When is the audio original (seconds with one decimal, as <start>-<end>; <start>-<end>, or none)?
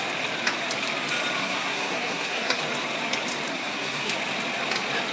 0.0-1.4; 2.6-3.5; 4.1-5.1